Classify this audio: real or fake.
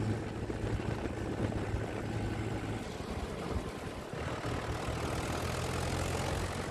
real